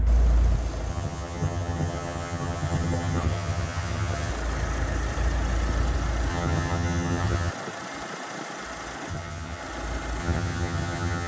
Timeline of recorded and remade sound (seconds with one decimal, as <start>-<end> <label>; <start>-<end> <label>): 0.0-0.9 recorded; 0.9-4.3 remade; 4.3-6.3 recorded; 6.3-7.5 remade; 7.5-9.1 recorded; 9.1-9.6 remade; 9.6-10.2 recorded; 10.2-11.3 remade